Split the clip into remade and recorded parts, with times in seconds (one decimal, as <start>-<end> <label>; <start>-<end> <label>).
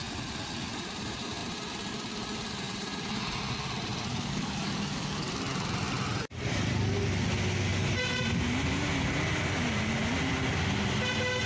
0.0-4.1 recorded; 4.1-5.3 remade; 5.3-11.5 recorded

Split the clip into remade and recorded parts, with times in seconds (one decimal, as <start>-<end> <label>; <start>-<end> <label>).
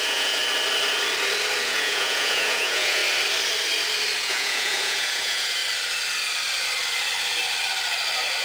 0.0-0.4 remade; 0.4-1.6 recorded; 1.6-3.0 remade; 3.0-4.2 recorded; 4.2-5.6 remade; 5.6-8.4 recorded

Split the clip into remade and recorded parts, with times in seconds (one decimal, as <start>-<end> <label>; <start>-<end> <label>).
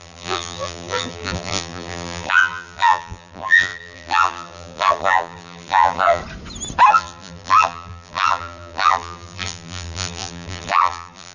0.0-6.2 remade; 6.2-6.9 recorded; 6.9-11.3 remade